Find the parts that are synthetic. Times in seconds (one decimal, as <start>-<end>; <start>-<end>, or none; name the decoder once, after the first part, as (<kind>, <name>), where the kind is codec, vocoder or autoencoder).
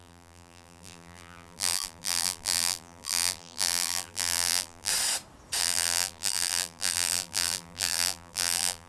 0.0-4.9 (vocoder, BigVGAN v2); 5.6-8.9